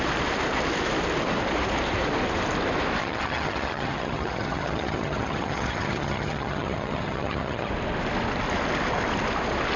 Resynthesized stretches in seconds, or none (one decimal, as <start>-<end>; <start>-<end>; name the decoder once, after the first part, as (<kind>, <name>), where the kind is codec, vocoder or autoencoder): 3.0-7.7 (vocoder, HiFi-GAN)